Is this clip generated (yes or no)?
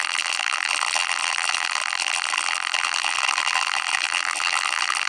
yes